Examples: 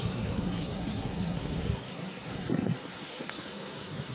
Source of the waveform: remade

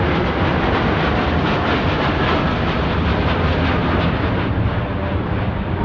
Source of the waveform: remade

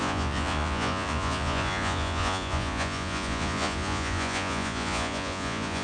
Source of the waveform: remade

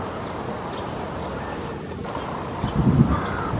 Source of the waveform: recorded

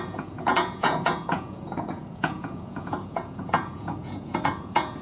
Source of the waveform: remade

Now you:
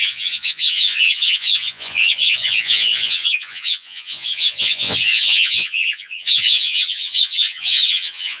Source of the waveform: remade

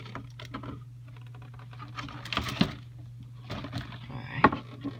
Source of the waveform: recorded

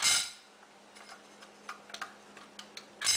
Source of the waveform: recorded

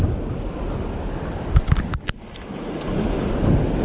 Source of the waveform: recorded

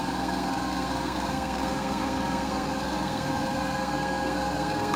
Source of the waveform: remade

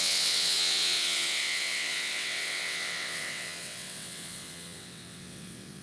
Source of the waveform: remade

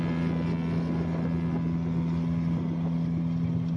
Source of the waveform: recorded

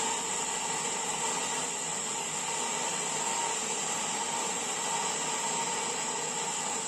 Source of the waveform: recorded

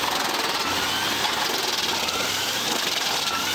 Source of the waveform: recorded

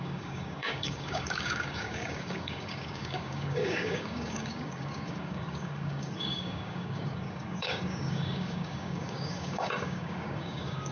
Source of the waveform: remade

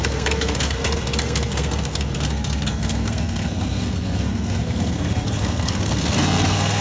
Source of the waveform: remade